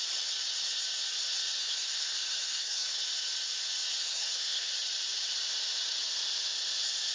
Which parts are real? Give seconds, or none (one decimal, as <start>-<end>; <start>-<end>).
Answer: 0.0-1.6; 3.0-4.0; 4.7-7.1